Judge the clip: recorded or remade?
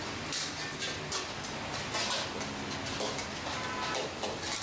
recorded